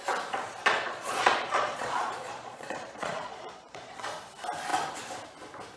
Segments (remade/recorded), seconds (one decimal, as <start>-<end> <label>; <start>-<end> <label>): 0.0-0.6 recorded; 0.6-4.1 remade; 4.1-5.8 recorded